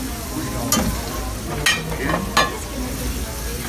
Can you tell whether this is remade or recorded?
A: recorded